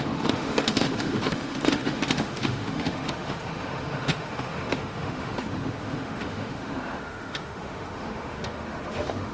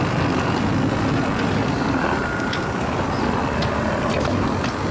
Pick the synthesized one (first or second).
first